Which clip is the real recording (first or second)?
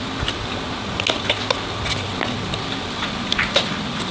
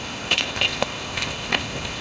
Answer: first